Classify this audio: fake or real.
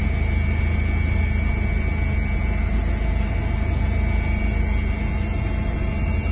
real